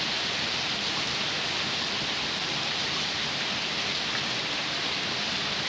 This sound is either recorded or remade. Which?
recorded